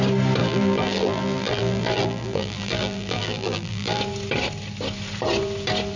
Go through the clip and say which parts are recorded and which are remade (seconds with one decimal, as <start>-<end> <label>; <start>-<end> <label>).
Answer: 0.0-0.4 recorded; 0.4-4.0 remade; 4.0-6.0 recorded